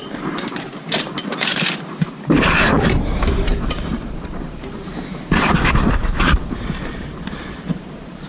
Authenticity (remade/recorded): remade